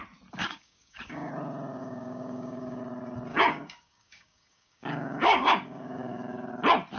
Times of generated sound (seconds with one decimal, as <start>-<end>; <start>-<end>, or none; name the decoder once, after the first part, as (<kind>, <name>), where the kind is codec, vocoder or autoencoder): 0.4-1.3 (codec, DAC); 1.8-2.8; 3.3-6.5